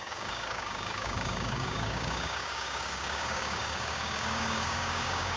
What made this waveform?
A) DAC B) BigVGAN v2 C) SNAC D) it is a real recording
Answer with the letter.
A